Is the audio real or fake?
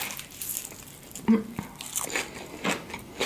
real